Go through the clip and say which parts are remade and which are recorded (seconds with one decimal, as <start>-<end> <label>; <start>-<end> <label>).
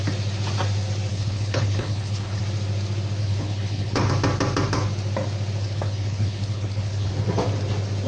0.0-1.1 recorded; 1.1-2.4 remade; 2.4-3.2 recorded; 3.2-4.1 remade; 4.1-5.6 recorded; 5.6-7.1 remade; 7.1-8.1 recorded